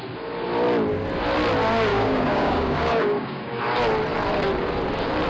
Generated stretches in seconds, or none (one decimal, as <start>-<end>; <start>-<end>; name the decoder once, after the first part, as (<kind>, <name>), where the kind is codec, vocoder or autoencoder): 1.9-3.6 (codec, DAC)